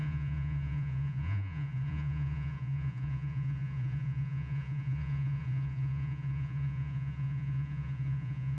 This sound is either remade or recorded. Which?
remade